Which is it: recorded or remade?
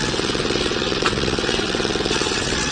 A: remade